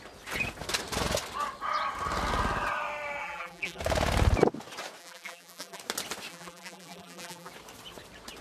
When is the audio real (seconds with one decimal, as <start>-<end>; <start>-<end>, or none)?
0.0-3.2; 3.8-5.0; 5.8-6.3; 7.5-8.4

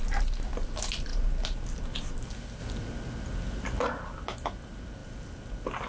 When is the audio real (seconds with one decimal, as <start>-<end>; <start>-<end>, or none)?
0.0-5.9

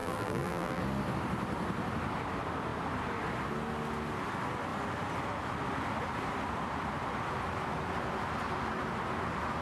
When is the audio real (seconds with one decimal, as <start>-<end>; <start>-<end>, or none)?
0.8-9.6

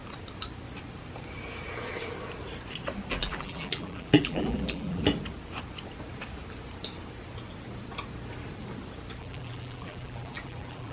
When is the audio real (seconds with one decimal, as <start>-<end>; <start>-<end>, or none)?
0.0-3.1; 5.0-9.2